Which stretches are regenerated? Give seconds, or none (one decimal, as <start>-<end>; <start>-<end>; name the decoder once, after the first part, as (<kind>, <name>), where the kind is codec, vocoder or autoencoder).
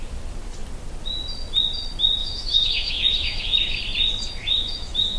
2.2-3.8 (autoencoder, DAC-VAE); 4.4-5.2